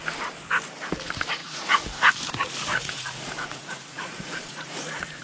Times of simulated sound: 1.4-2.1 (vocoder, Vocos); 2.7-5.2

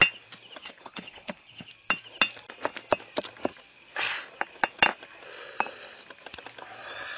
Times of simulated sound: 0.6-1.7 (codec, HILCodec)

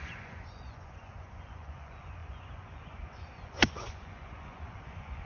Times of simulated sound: 0.0-5.3 (vocoder, Vocos)

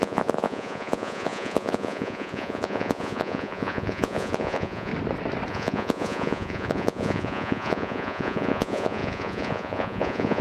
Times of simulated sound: 0.0-4.9 (vocoder, Vocos); 5.5-10.4